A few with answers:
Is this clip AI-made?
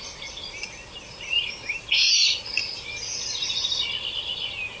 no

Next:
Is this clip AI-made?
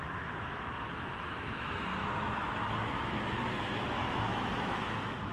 yes